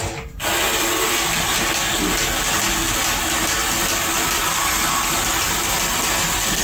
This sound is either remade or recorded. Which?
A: recorded